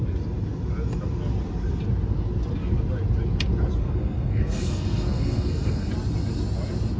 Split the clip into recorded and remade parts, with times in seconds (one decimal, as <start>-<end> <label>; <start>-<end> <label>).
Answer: 0.0-3.8 recorded; 3.8-5.9 remade; 5.9-7.0 recorded